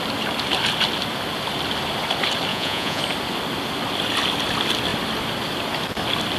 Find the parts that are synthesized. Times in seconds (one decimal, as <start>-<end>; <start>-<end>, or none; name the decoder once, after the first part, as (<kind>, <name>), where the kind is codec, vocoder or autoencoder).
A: 2.5-3.0 (vocoder, Vocos)